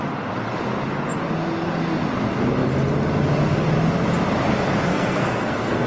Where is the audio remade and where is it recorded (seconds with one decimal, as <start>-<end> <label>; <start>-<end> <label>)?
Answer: 0.0-4.9 recorded; 4.9-5.9 remade